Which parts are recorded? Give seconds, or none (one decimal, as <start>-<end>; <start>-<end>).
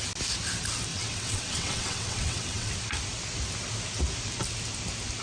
0.0-0.9; 2.7-5.2